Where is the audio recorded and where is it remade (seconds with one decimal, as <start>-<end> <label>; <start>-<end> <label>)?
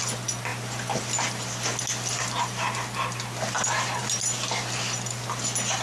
0.0-5.8 recorded